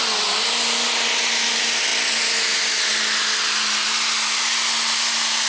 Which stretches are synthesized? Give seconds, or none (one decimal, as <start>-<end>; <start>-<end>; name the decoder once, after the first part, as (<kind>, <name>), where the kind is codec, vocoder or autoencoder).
none